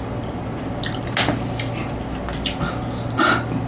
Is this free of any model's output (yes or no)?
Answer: yes